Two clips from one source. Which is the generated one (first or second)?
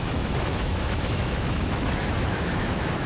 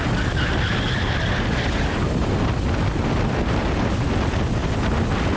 first